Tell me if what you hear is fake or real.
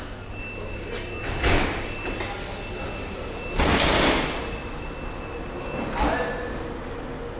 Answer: real